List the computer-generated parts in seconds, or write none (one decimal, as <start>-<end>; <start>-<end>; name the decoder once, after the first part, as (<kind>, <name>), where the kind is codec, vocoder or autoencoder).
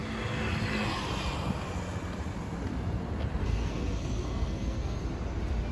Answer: 3.4-5.0 (codec, SNAC)